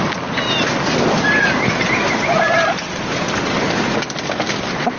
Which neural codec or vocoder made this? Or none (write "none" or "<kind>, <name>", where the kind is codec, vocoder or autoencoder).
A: none